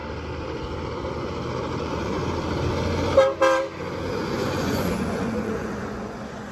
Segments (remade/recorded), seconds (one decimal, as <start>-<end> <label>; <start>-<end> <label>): 0.0-0.9 recorded; 0.9-1.3 remade; 1.3-1.8 recorded; 1.8-2.2 remade; 2.2-4.0 recorded; 4.0-6.5 remade